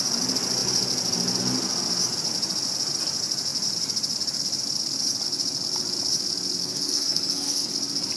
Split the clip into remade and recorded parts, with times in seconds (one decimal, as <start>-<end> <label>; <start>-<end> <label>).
0.0-6.6 recorded; 6.6-7.7 remade; 7.7-8.2 recorded